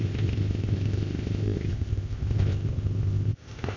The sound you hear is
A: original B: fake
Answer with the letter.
B